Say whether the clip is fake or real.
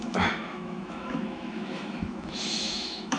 fake